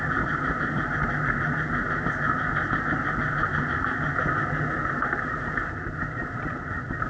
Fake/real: real